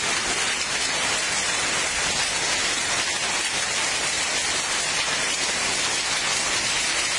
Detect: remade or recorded recorded